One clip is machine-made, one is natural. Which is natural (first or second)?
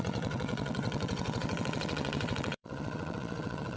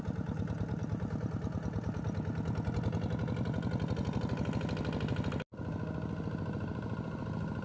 second